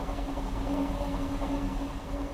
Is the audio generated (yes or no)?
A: yes